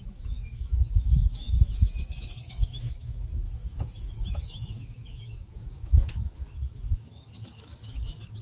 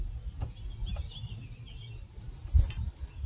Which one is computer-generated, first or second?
first